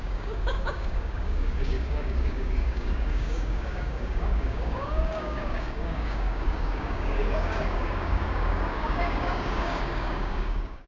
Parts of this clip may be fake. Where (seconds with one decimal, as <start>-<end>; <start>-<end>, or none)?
0.0-10.9